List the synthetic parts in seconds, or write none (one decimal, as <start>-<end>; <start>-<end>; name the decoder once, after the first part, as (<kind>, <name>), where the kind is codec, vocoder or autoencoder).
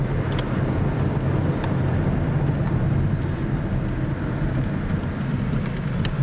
none